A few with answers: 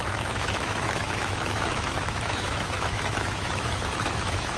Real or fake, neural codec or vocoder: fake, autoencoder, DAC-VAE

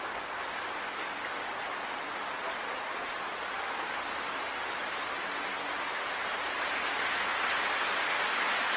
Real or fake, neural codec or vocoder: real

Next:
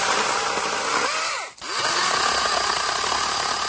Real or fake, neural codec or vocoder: real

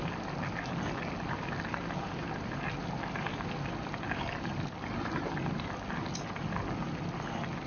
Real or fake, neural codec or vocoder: real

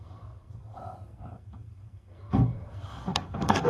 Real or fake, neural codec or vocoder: fake, codec, SNAC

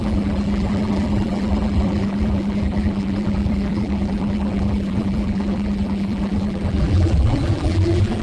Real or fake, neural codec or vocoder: fake, vocoder, BigVGAN v2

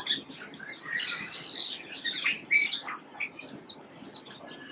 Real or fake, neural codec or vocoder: real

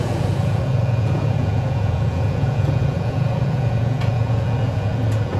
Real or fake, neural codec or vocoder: fake, vocoder, Vocos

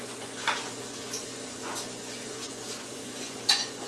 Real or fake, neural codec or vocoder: fake, vocoder, Vocos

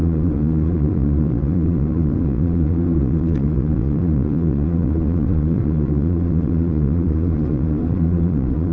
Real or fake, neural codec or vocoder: fake, vocoder, Vocos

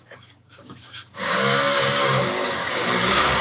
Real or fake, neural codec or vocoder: fake, codec, DAC